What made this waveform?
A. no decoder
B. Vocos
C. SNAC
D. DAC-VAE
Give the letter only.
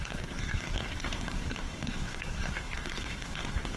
C